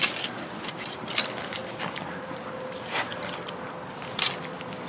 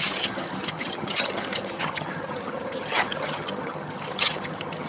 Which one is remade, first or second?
second